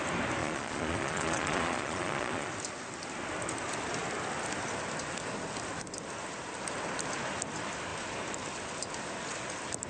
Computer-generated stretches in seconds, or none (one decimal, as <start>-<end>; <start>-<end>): 0.4-2.5

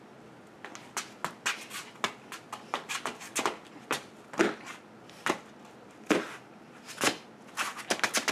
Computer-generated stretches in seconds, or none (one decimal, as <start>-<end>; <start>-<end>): none

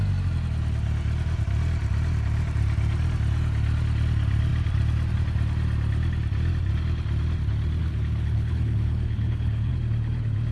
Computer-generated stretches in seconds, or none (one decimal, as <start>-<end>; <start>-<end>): 7.8-9.7

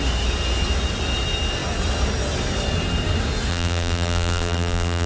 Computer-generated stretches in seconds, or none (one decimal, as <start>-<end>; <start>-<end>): 3.5-5.1

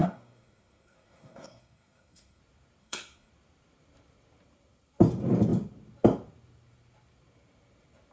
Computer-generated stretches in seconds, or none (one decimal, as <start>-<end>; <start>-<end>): 0.0-2.4; 2.8-3.3

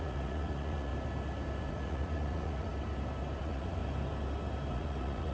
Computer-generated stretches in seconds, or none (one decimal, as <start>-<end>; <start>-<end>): 0.0-0.9; 1.7-2.7; 3.4-3.8; 4.7-5.3

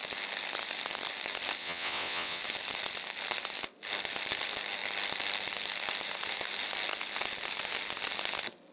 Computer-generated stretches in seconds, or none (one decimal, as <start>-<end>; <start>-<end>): 1.6-2.4